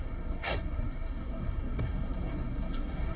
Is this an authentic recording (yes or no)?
no